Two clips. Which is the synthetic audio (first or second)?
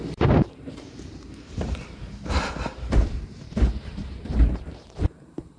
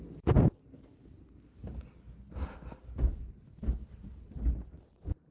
first